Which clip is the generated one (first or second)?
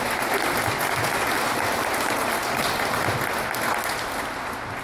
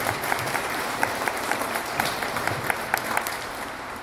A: second